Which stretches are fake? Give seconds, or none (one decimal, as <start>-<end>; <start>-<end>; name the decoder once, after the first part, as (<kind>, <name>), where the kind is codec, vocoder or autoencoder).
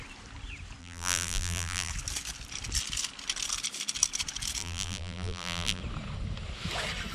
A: 0.8-1.9 (vocoder, BigVGAN v2); 4.6-5.8